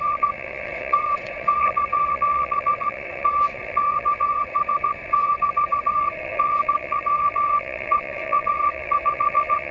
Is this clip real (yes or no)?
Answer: no